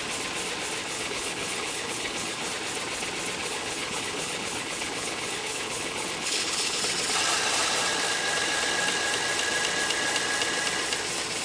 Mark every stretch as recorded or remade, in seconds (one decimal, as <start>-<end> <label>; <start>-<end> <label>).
0.0-0.8 recorded; 0.8-2.5 remade; 2.5-3.4 recorded; 3.4-6.8 remade; 6.8-11.4 recorded